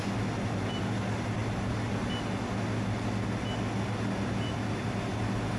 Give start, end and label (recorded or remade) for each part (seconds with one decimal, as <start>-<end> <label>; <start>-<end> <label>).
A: 0.0-5.6 recorded